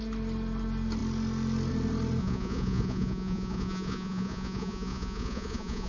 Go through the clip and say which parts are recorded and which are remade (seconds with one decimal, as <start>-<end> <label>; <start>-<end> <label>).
0.0-2.2 recorded; 2.2-5.9 remade